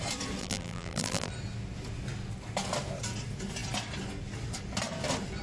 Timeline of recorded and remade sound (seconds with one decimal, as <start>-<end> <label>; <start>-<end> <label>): 0.0-0.4 recorded; 0.4-1.3 remade; 1.3-5.4 recorded